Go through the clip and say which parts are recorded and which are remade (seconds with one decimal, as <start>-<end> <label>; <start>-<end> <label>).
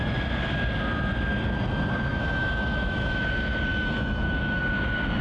0.0-2.1 recorded; 2.1-3.2 remade; 3.2-3.7 recorded; 3.7-4.6 remade; 4.6-5.2 recorded